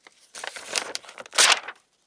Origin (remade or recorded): recorded